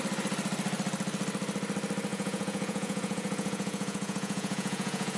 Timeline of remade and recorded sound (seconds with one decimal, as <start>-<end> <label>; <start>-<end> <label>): 0.0-2.1 recorded; 2.1-5.2 remade